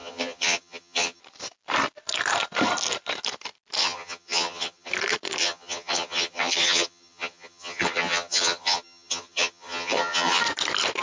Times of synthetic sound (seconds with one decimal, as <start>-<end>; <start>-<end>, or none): 0.0-1.2; 3.8-4.9; 5.4-10.4